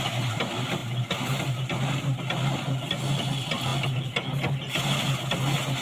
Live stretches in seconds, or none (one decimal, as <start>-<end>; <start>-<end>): 0.0-5.8